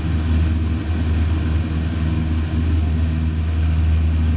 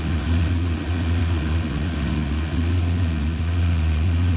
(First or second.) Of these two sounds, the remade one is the second